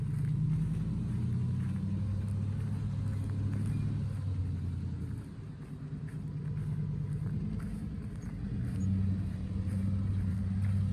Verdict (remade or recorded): recorded